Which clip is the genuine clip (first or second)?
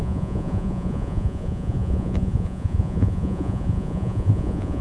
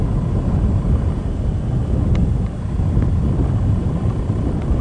second